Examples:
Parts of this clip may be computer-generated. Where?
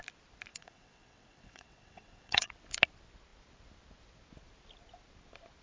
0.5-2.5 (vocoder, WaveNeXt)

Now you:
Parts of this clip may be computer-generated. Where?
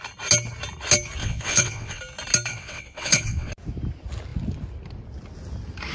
1.2-2.0 (vocoder, WaveNeXt); 2.5-3.5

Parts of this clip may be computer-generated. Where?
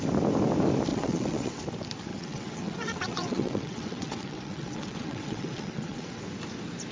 0.9-1.6 (vocoder, WaveNeXt); 2.1-6.2